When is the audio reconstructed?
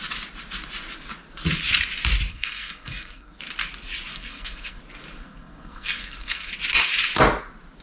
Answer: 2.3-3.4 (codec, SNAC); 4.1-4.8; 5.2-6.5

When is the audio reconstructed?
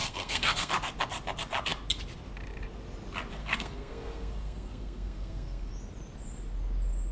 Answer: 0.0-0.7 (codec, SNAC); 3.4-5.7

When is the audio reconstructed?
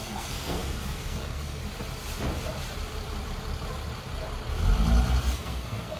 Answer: 0.0-1.6 (codec, SNAC); 5.2-6.0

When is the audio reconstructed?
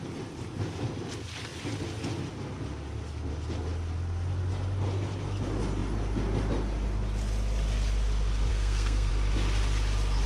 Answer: 8.5-9.1 (codec, SNAC)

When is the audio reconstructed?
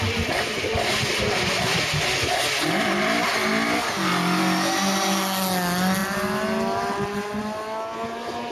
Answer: none